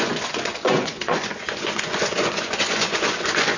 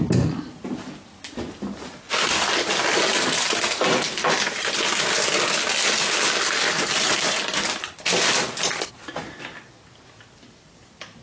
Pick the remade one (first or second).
first